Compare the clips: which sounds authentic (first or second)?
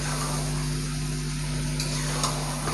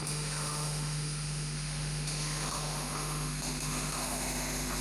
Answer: first